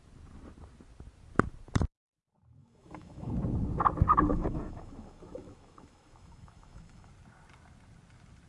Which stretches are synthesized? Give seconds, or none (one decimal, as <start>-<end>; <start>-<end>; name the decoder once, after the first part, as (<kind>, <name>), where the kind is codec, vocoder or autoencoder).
2.6-3.3 (autoencoder, DAC-VAE); 4.3-7.1